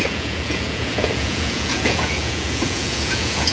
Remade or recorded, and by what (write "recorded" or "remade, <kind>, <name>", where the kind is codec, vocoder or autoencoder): remade, vocoder, Vocos